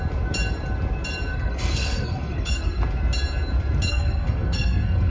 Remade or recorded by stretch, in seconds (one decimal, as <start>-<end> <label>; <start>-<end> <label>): 0.0-1.3 recorded; 1.3-2.8 remade; 2.8-3.9 recorded; 3.9-5.1 remade